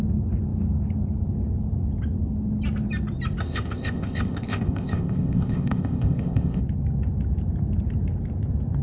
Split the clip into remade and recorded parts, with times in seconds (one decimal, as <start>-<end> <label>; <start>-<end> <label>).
0.0-3.4 recorded; 3.4-6.6 remade; 6.6-8.8 recorded